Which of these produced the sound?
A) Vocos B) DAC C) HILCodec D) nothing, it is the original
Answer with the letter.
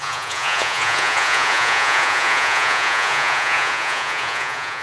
A